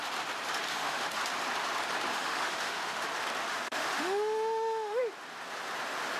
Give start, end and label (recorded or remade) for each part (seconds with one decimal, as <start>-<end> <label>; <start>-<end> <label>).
0.0-0.7 recorded; 0.7-1.2 remade; 1.2-2.1 recorded; 2.1-3.1 remade; 3.1-3.5 recorded; 3.5-5.0 remade; 5.0-6.2 recorded